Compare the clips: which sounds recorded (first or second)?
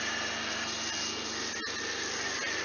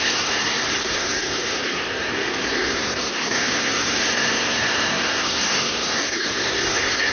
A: first